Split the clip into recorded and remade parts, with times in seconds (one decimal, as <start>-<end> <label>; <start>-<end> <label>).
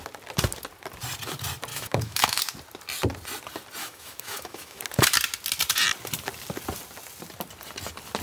0.0-1.7 recorded; 1.7-2.4 remade; 2.4-3.8 recorded; 3.8-4.8 remade; 4.8-8.2 recorded